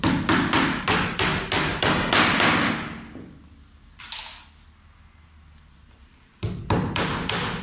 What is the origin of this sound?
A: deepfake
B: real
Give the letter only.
B